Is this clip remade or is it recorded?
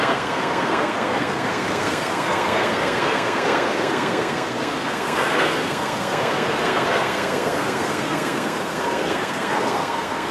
remade